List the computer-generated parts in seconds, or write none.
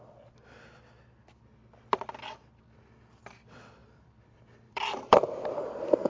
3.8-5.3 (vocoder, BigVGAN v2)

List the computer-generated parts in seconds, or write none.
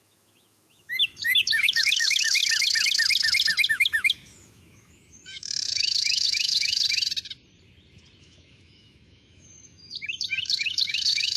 0.0-2.4 (autoencoder, DAC-VAE); 3.7-6.8; 8.2-11.4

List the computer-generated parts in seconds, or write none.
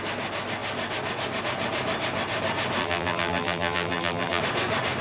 2.8-4.4 (vocoder, BigVGAN v2)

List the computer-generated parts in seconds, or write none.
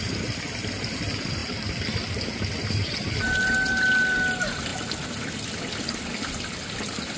none